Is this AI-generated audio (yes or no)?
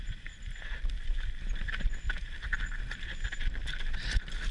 no